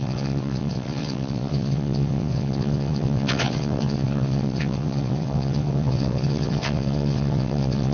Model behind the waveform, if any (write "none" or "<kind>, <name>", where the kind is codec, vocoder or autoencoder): vocoder, WaveNeXt